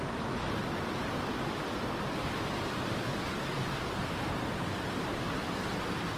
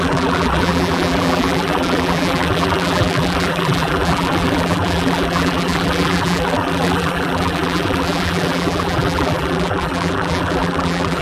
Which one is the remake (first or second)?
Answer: second